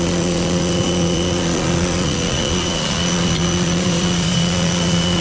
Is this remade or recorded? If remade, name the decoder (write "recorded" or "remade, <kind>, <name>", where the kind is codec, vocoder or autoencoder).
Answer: remade, vocoder, Vocos